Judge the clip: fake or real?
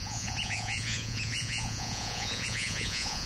fake